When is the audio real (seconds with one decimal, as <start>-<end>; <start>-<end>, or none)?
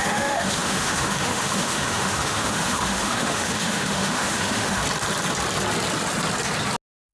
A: 4.8-7.1